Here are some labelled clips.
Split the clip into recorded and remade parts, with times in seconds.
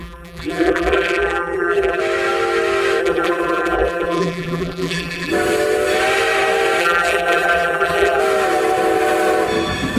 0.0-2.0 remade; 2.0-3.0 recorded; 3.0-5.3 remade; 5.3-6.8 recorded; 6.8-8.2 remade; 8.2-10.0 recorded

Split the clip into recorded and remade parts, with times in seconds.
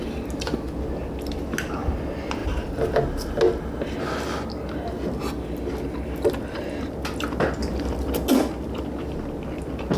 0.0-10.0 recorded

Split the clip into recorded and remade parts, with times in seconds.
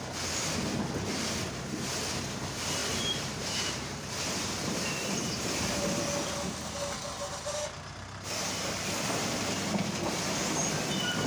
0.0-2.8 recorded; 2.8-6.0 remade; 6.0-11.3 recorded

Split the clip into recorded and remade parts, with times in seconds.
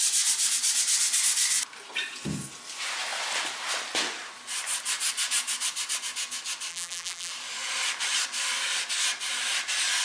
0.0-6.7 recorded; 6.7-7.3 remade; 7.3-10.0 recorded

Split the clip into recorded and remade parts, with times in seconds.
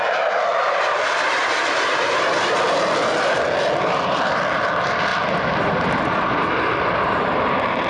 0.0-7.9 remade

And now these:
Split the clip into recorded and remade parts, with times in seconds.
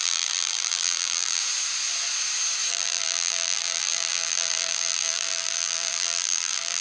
0.0-1.4 remade; 1.4-2.7 recorded; 2.7-6.8 remade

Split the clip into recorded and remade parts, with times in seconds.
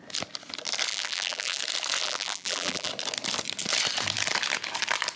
0.0-0.9 recorded; 0.9-1.6 remade; 1.6-2.0 recorded; 2.0-2.9 remade; 2.9-5.2 recorded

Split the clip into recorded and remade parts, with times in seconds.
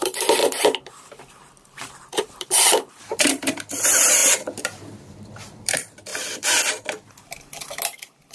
0.0-6.1 remade; 6.1-8.3 recorded